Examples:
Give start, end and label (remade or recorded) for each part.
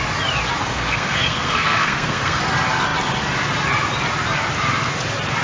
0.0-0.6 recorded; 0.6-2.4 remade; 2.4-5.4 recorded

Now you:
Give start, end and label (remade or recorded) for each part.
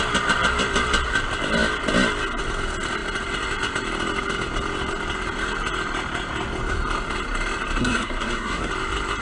0.0-7.8 recorded; 7.8-8.7 remade; 8.7-9.2 recorded